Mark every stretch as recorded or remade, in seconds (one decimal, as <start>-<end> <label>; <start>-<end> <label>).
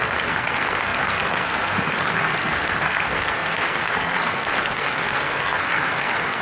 0.0-6.4 remade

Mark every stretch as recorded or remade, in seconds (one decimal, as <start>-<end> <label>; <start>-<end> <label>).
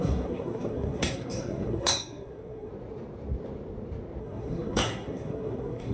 0.0-2.7 remade; 2.7-4.2 recorded; 4.2-5.9 remade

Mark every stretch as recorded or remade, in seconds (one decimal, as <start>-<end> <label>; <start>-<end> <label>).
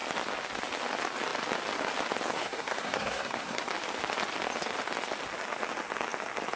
0.0-2.3 recorded; 2.3-3.7 remade; 3.7-6.6 recorded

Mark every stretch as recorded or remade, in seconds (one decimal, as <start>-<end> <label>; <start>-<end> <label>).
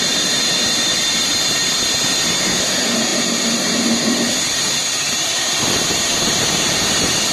0.0-7.3 recorded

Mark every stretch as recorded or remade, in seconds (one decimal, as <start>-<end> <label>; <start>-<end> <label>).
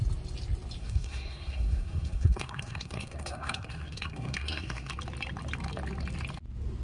0.0-0.8 recorded; 0.8-4.9 remade; 4.9-6.8 recorded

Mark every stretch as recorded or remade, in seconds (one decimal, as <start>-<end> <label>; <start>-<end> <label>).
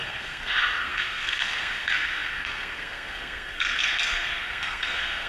0.0-5.3 remade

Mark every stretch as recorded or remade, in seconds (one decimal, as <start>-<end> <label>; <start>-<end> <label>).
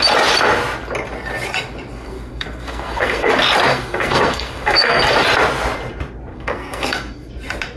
0.0-1.9 recorded; 1.9-3.3 remade; 3.3-3.7 recorded; 3.7-5.0 remade; 5.0-6.3 recorded; 6.3-7.3 remade; 7.3-7.8 recorded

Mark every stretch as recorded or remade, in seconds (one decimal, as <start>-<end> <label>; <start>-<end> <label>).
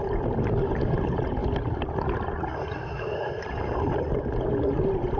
0.0-5.2 recorded